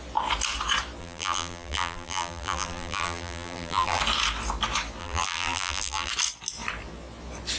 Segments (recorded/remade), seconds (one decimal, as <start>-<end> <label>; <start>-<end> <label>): 0.0-1.0 recorded; 1.0-4.0 remade; 4.0-5.0 recorded; 5.0-6.1 remade; 6.1-7.6 recorded